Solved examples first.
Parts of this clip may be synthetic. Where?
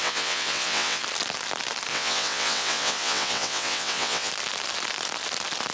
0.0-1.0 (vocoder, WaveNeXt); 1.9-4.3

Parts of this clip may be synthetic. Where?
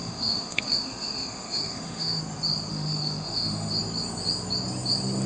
0.0-2.2 (autoencoder, DAC-VAE); 2.7-3.7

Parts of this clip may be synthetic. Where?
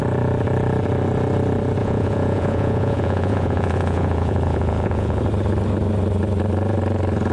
1.8-5.2 (vocoder, Vocos)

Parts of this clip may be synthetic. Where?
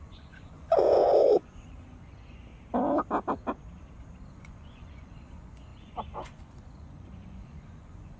0.0-2.5 (vocoder, Vocos); 4.3-8.2